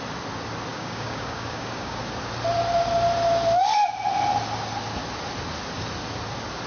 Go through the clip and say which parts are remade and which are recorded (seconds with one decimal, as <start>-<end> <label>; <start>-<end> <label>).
0.0-0.7 recorded; 0.7-2.0 remade; 2.0-6.7 recorded